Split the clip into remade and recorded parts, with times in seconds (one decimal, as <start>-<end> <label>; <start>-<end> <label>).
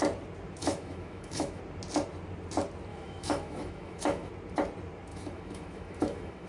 0.0-0.6 recorded; 0.6-1.6 remade; 1.6-2.9 recorded; 2.9-4.3 remade; 4.3-5.1 recorded; 5.1-6.5 remade